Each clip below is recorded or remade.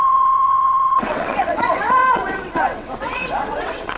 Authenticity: remade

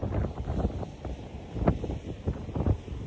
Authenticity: recorded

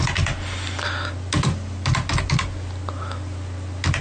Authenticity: recorded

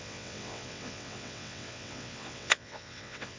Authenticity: remade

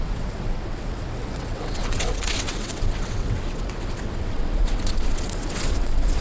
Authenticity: remade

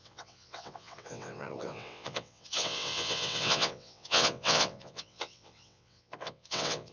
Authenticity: remade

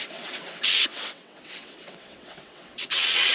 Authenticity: remade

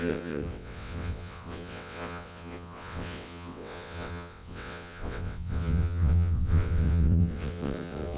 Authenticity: remade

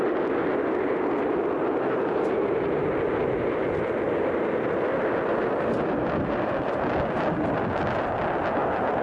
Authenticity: recorded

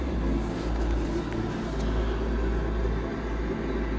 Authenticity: recorded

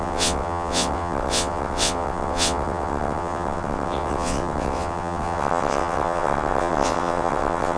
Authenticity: remade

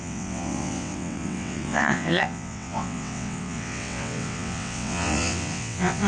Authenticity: remade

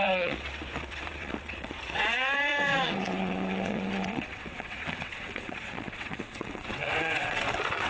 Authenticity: remade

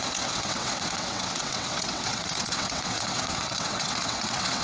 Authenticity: remade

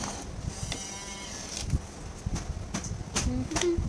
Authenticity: recorded